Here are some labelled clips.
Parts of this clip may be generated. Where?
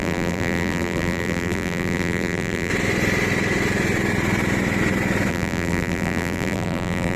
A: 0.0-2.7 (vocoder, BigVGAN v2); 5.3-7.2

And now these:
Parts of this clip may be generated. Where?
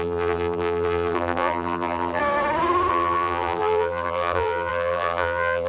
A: 0.0-2.2 (vocoder, BigVGAN v2); 2.9-5.7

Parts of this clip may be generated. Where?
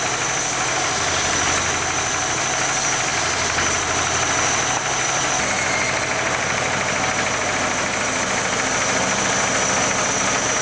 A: none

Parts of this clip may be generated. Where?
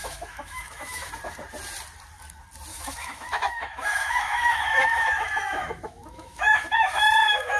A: 0.0-1.1 (autoencoder, DAC-VAE); 2.7-7.6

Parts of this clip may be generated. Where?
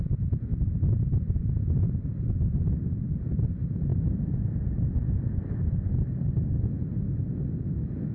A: none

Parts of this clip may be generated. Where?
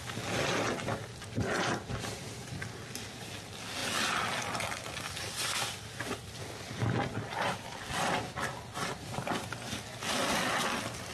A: none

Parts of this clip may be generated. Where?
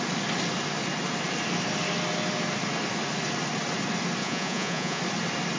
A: 4.2-5.0 (vocoder, Vocos)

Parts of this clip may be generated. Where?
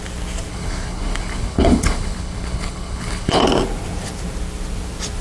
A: 0.5-3.4 (codec, HILCodec)